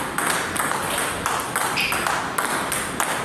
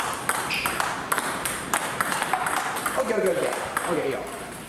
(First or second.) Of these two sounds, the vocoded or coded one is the second